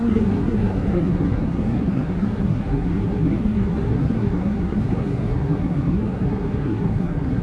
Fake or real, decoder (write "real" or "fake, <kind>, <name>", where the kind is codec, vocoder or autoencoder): fake, codec, SNAC